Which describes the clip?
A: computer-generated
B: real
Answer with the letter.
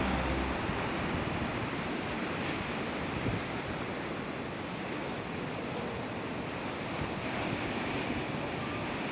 B